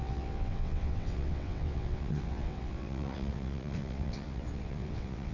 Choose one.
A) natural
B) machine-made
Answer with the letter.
B